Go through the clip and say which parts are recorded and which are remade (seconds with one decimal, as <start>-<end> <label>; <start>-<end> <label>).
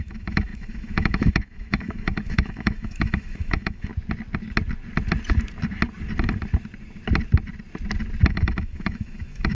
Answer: 0.0-3.9 remade; 3.9-8.3 recorded; 8.3-9.5 remade